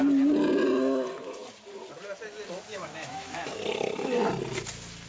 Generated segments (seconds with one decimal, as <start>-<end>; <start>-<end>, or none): 2.7-3.5